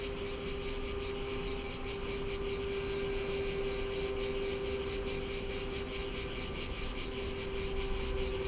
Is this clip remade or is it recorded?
recorded